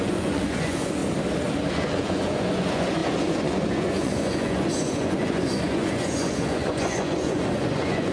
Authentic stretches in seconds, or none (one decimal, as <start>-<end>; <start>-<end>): 1.0-1.7